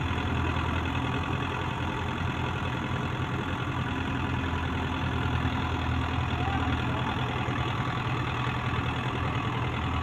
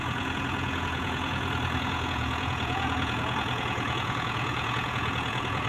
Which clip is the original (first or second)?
first